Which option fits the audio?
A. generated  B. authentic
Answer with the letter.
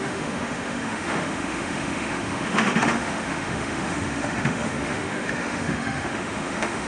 A